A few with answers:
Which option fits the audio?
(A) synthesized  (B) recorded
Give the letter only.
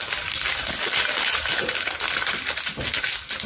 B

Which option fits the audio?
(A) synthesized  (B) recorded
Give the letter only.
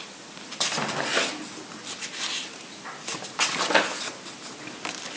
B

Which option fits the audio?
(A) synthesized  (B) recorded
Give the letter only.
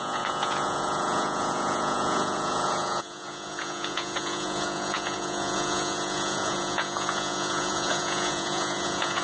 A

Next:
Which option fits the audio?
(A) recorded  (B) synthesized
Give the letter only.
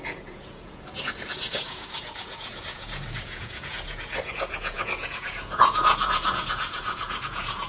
B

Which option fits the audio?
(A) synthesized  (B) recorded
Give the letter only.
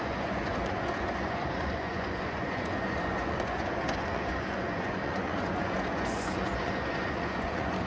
A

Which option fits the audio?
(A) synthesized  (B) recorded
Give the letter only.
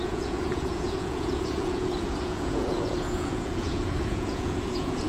A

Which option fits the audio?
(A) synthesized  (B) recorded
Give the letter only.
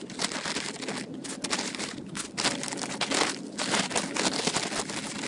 B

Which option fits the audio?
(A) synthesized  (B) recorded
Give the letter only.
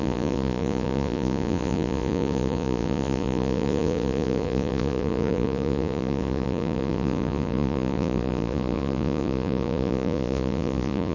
A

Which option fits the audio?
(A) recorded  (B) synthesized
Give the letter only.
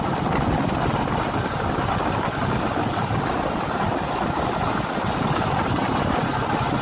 A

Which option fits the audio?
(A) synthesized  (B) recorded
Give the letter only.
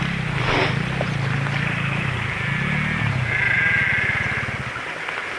B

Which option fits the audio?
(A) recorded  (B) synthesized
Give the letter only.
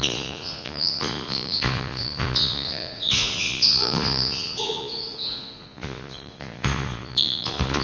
B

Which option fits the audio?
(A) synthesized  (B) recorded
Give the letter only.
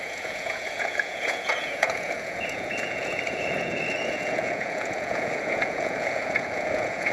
A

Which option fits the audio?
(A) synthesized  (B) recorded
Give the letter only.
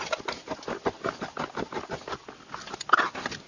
B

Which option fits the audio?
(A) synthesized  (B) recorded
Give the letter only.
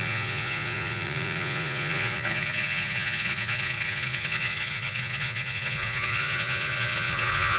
A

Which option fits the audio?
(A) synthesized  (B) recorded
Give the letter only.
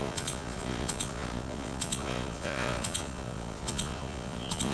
A